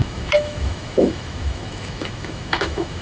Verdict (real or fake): fake